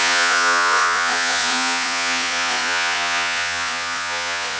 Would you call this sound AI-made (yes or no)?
yes